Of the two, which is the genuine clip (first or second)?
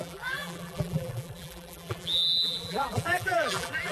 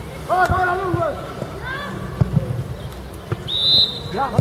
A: second